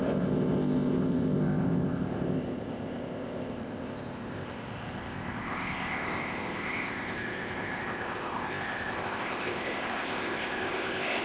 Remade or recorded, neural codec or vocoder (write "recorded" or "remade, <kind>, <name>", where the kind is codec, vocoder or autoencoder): remade, codec, ZipCodec